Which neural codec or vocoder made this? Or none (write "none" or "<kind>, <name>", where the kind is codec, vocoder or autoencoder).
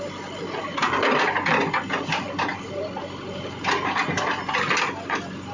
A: none